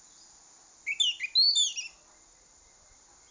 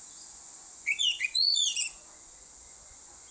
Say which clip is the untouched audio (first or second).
first